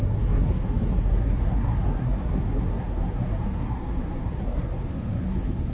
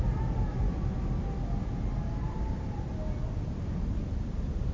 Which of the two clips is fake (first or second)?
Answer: first